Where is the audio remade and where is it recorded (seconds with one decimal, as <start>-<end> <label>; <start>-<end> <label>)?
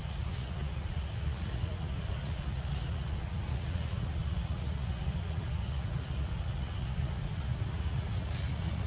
0.0-8.9 remade